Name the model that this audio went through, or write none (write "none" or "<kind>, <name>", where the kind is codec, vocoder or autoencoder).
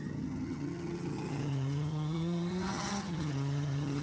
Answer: vocoder, HiFi-GAN